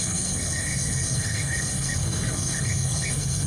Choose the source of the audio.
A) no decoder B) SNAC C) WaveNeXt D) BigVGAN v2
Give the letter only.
B